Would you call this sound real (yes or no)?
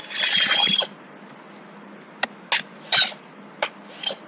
yes